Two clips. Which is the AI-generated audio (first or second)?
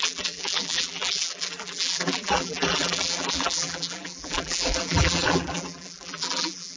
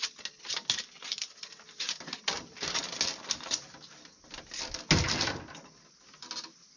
first